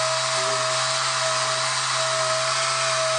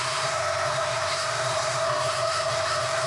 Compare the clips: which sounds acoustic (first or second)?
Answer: first